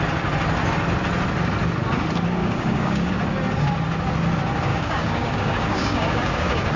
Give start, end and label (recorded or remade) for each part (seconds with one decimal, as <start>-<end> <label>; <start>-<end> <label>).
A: 0.0-2.4 recorded; 2.4-3.1 remade; 3.1-4.7 recorded; 4.7-6.8 remade